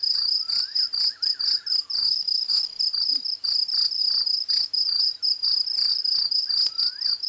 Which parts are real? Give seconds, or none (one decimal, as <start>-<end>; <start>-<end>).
0.0-2.0; 2.8-7.3